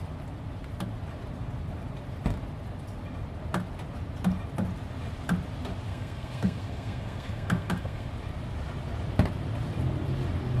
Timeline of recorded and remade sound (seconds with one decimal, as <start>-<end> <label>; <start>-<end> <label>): 0.0-5.9 recorded; 5.9-8.1 remade; 8.1-10.6 recorded